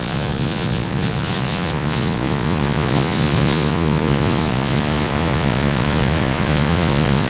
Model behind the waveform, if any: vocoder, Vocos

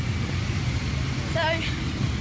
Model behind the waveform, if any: none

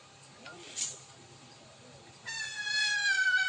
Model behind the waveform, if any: vocoder, BigVGAN v2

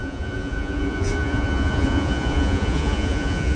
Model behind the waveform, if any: vocoder, Vocos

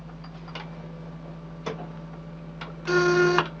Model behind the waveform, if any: none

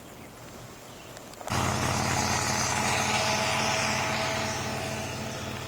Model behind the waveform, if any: none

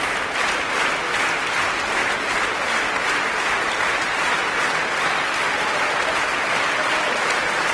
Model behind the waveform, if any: none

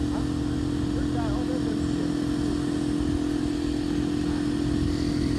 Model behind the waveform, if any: none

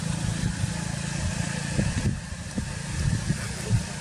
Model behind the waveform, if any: vocoder, BigVGAN v2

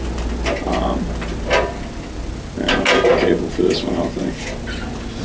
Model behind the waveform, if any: none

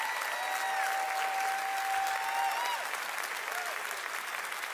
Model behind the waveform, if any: none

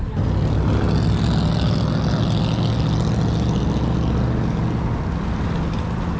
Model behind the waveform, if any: none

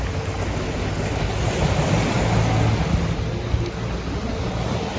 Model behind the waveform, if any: none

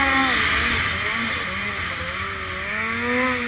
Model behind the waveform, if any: none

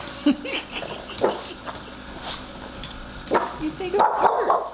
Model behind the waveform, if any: none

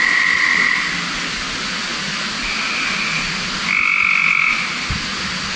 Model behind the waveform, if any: none